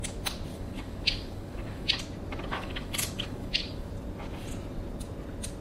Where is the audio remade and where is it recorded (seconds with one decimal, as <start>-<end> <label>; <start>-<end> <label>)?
0.0-0.5 recorded; 0.5-2.0 remade; 2.0-2.5 recorded; 2.5-3.9 remade; 3.9-5.6 recorded